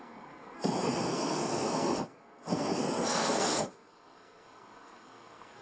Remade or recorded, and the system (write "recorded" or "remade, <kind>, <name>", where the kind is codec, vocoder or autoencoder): remade, codec, SNAC